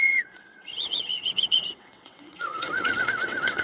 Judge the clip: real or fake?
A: fake